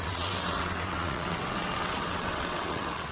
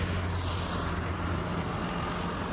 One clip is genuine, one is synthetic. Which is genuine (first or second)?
second